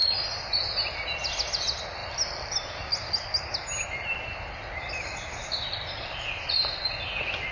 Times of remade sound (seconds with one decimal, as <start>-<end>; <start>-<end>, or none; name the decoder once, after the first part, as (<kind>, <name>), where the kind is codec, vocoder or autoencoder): none